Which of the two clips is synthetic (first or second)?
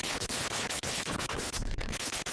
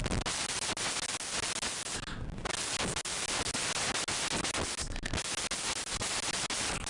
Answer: first